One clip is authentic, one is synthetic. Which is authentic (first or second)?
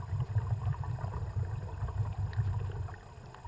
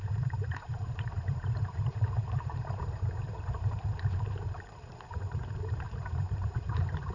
first